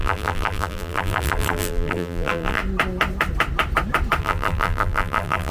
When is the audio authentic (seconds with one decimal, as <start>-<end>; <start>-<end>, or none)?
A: 2.6-4.2